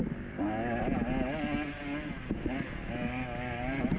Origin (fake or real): real